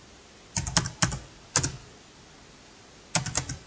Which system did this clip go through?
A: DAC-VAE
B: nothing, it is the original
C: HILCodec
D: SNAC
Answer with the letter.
B